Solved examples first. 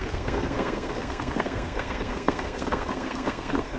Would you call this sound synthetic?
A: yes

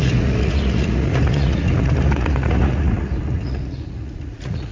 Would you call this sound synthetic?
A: yes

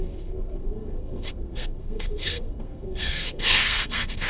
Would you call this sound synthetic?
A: yes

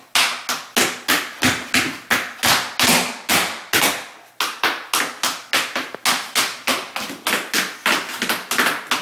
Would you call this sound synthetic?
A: no